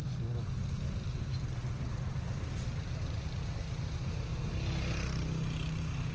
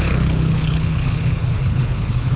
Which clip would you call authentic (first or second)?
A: first